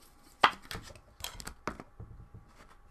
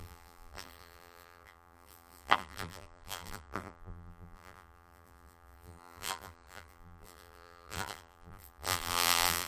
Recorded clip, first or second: first